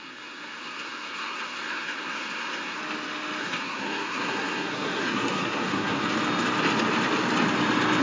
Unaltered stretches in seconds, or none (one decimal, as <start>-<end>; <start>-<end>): 2.8-3.4; 6.0-8.0